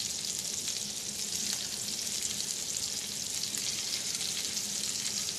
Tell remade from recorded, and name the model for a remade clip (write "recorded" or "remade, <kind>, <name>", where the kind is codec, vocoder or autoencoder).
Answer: recorded